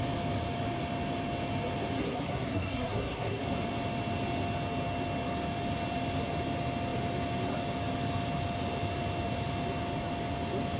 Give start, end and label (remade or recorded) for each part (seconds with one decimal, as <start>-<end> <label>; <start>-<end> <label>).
0.0-2.0 recorded; 2.0-3.4 remade; 3.4-10.8 recorded